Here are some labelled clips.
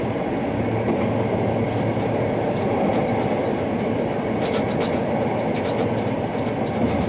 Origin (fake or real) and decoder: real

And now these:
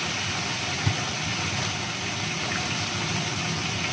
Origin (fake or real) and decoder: real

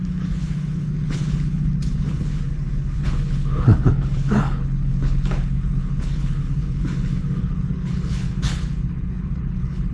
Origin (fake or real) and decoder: fake, codec, HILCodec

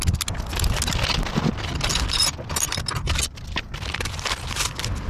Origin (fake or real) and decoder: real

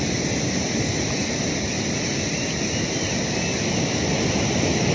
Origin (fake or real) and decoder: real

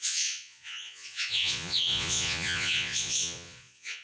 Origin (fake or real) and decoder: fake, vocoder, Vocos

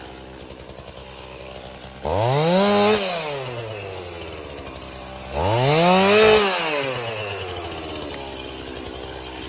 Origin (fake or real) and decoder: real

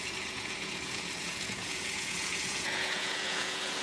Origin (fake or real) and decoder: fake, vocoder, Vocos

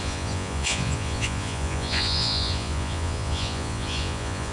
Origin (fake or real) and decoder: fake, vocoder, Vocos